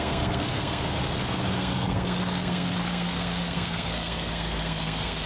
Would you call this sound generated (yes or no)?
yes